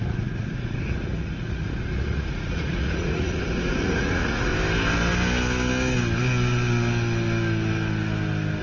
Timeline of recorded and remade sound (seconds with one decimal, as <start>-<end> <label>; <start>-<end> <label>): 0.0-4.5 remade; 4.5-8.6 recorded